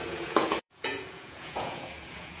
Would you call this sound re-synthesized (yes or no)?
yes